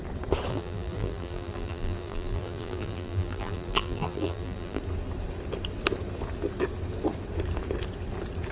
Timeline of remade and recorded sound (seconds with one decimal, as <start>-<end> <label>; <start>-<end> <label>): 0.0-0.5 recorded; 0.5-4.8 remade; 4.8-8.5 recorded